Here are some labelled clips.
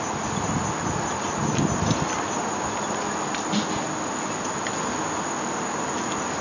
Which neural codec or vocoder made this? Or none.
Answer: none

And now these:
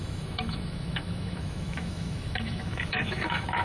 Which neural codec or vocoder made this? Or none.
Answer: autoencoder, DAC-VAE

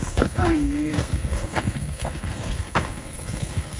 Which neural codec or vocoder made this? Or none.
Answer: codec, SNAC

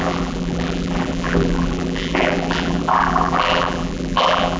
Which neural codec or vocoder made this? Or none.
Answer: vocoder, BigVGAN v2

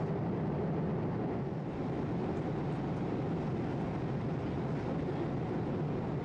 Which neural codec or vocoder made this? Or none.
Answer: none